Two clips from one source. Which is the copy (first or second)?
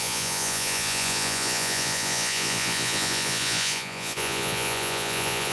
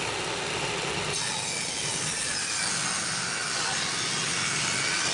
first